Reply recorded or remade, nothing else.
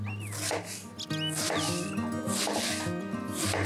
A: recorded